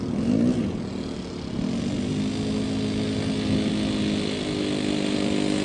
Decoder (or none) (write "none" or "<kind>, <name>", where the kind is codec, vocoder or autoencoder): none